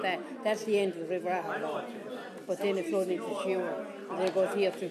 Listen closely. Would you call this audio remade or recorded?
recorded